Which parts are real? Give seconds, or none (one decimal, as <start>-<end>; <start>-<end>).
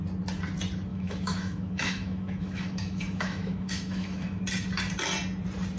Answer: 0.0-0.9; 4.4-5.8